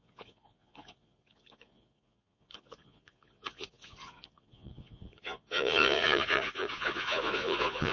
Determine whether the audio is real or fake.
fake